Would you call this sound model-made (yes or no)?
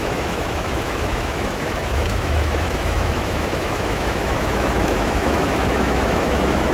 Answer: yes